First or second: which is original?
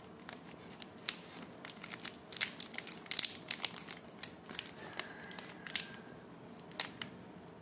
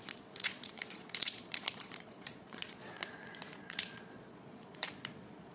first